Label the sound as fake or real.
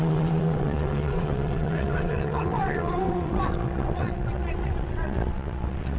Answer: fake